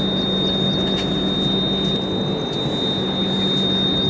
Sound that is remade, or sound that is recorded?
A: recorded